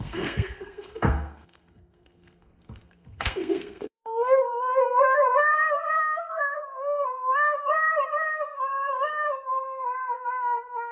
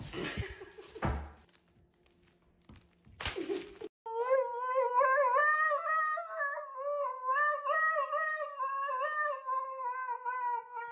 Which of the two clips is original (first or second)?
second